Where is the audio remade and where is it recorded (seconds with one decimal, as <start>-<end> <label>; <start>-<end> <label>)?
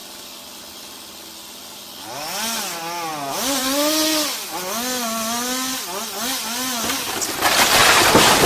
0.0-8.5 recorded